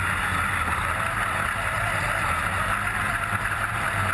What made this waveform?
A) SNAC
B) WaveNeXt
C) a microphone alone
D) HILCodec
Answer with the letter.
C